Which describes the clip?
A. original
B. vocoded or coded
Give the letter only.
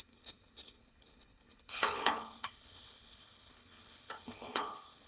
B